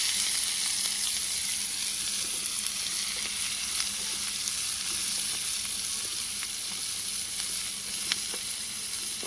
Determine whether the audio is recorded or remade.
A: recorded